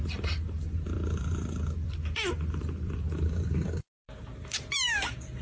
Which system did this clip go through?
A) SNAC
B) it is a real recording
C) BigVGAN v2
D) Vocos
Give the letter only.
C